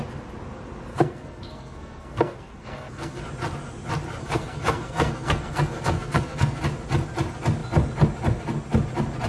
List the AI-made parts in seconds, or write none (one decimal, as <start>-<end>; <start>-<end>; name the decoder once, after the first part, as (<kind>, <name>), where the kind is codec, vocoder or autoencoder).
0.9-3.2 (codec, SNAC); 4.2-6.6